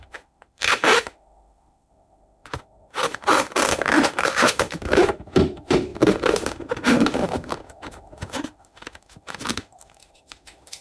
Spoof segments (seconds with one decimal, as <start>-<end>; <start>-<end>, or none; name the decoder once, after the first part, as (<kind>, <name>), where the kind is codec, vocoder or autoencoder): 0.0-10.8 (autoencoder, DAC-VAE)